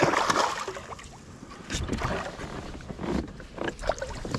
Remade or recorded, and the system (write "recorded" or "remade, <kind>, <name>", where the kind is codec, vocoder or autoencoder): recorded